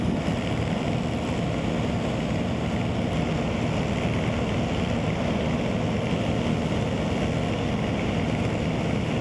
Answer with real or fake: real